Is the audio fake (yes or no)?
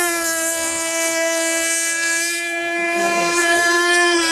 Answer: yes